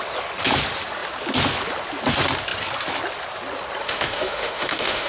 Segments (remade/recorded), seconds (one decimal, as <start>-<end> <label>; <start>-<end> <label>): 0.0-3.8 recorded; 3.8-5.1 remade